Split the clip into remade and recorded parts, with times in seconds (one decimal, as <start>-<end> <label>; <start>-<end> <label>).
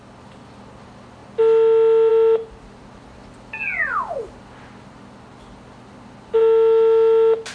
0.0-7.5 recorded